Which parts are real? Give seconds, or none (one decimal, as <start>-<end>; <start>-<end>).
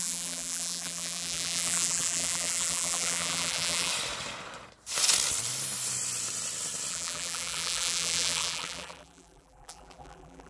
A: 3.9-6.9